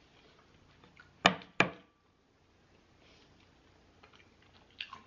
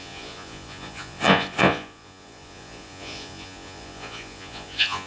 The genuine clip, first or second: first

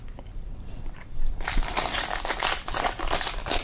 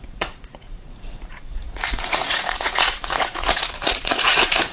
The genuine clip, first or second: first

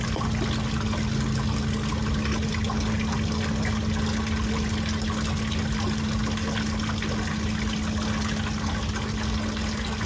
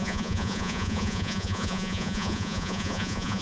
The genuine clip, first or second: first